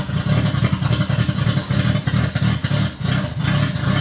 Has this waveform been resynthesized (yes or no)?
no